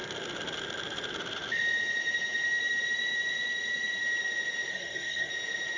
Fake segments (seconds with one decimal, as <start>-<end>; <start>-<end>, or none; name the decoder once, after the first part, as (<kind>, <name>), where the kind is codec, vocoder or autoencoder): 4.7-5.3 (codec, SNAC)